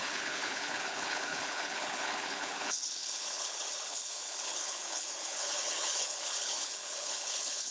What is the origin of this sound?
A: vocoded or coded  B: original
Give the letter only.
A